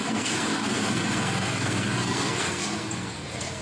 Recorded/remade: remade